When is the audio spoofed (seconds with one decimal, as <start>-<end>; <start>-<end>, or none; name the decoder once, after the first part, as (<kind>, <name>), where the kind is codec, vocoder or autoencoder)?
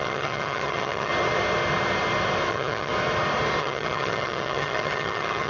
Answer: 0.0-1.1 (vocoder, HiFi-GAN); 2.5-2.9; 3.6-5.5